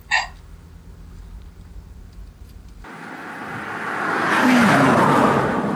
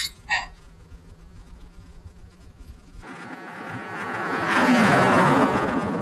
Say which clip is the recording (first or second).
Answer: first